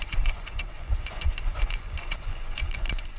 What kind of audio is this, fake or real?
fake